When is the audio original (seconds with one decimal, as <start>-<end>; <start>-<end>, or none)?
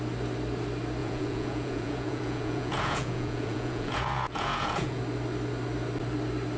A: 0.0-1.0; 5.0-6.6